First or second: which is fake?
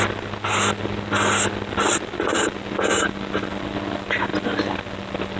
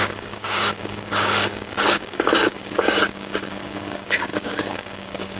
second